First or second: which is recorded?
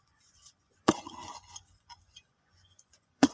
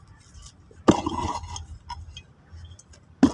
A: second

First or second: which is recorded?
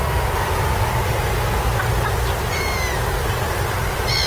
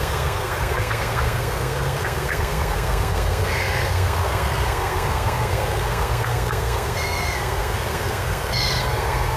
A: first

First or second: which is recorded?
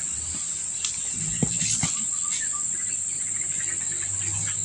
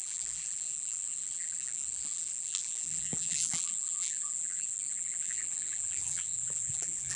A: first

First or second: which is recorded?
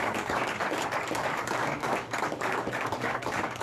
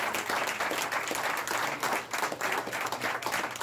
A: second